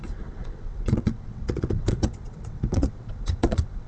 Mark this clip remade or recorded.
remade